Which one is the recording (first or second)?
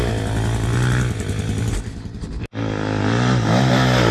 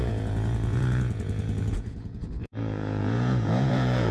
first